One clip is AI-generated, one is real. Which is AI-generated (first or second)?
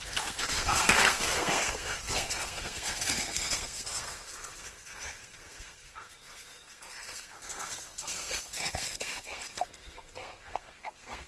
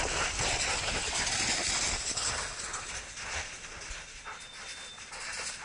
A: first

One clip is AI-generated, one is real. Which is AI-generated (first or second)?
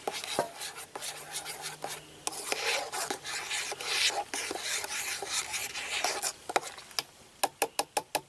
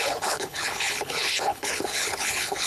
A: second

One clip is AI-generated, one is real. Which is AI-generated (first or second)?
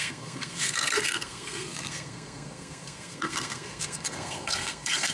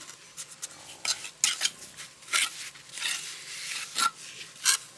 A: first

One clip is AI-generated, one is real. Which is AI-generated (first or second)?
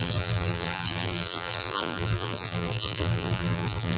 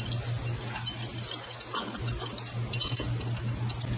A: first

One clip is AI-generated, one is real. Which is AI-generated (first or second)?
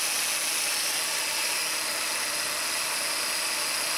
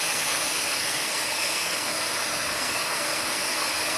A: second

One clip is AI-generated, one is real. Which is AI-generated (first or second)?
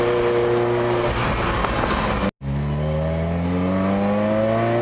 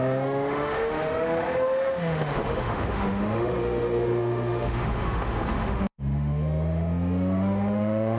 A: second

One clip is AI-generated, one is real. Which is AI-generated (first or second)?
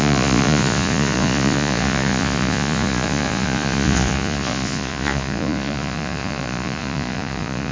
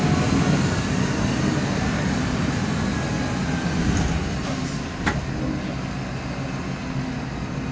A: first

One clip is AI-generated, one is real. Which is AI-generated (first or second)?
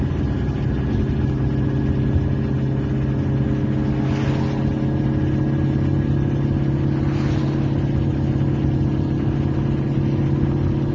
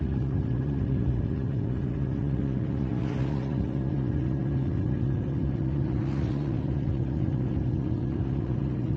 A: second